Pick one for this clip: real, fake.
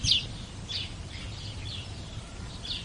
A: fake